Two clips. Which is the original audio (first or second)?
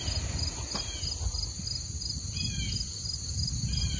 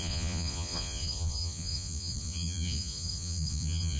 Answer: first